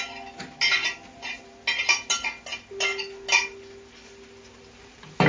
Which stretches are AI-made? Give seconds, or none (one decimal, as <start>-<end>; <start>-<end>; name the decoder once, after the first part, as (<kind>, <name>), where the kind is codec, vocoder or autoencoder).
none